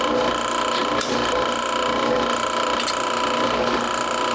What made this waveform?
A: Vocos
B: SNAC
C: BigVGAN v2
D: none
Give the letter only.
D